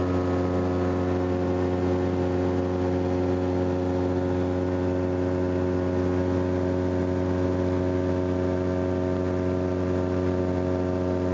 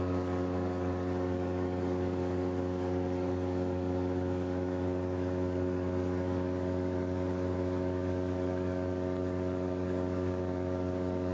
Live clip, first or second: first